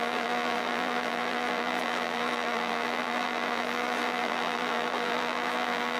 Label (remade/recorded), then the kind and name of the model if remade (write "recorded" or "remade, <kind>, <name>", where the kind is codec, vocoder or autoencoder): remade, vocoder, BigVGAN v2